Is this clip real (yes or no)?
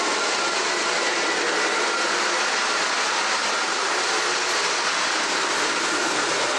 no